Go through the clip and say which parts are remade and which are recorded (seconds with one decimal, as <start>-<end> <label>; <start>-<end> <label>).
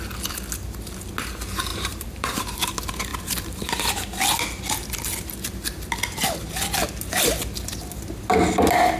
0.0-1.7 recorded; 1.7-2.6 remade; 2.6-3.1 recorded; 3.1-3.7 remade; 3.7-9.0 recorded